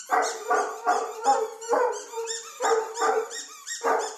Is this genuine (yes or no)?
no